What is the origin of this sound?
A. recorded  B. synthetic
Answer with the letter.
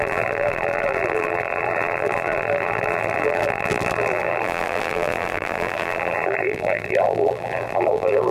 B